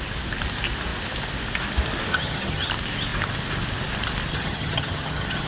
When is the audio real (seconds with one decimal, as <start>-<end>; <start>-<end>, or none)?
0.0-2.1; 2.7-4.3